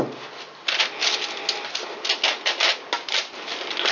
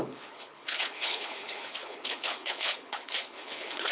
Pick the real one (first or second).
first